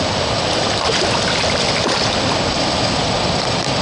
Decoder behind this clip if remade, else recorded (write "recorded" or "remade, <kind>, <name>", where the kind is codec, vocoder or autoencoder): recorded